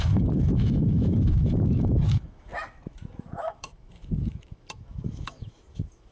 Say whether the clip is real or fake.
fake